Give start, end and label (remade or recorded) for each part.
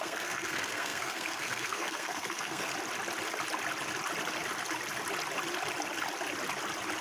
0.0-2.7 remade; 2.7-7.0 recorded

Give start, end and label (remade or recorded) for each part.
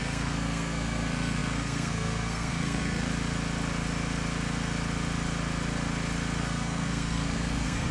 0.0-3.1 remade; 3.1-6.4 recorded; 6.4-7.9 remade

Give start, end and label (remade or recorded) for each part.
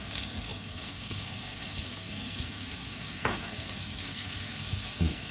0.0-5.3 remade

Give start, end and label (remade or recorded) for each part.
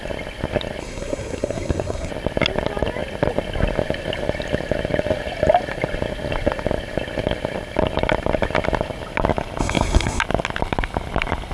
0.0-0.8 recorded; 0.8-2.1 remade; 2.1-9.6 recorded; 9.6-10.2 remade; 10.2-11.5 recorded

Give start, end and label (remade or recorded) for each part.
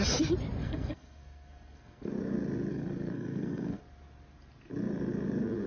0.0-0.6 recorded; 0.6-2.1 remade; 2.1-2.7 recorded; 2.7-3.8 remade; 3.8-5.7 recorded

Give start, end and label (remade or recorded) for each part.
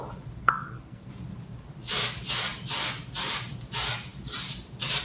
0.0-0.4 recorded; 0.4-1.1 remade; 1.1-5.0 recorded